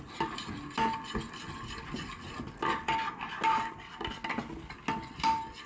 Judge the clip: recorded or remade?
recorded